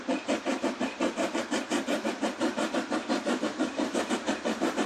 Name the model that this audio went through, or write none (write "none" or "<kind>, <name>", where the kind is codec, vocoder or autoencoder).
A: vocoder, BigVGAN v2